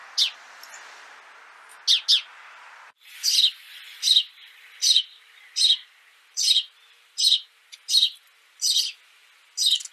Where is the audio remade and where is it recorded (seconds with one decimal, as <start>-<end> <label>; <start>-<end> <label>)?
0.0-6.1 recorded; 6.1-7.6 remade; 7.6-9.9 recorded